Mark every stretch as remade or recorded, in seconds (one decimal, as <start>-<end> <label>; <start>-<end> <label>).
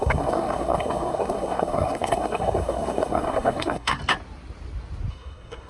0.0-4.0 remade; 4.0-5.1 recorded; 5.1-5.7 remade